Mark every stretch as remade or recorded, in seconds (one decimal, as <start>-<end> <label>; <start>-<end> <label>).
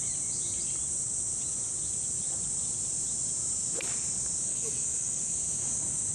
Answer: 0.0-4.5 recorded; 4.5-5.3 remade; 5.3-6.1 recorded